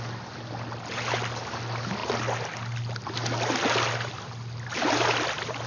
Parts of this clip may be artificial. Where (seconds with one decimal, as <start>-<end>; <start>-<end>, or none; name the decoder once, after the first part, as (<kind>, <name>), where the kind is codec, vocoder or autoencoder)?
none